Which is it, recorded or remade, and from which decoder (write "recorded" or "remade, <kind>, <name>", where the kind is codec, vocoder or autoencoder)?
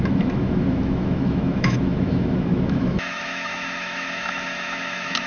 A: remade, autoencoder, DAC-VAE